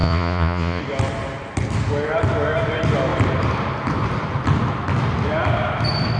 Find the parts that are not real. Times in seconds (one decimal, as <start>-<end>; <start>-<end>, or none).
0.0-0.8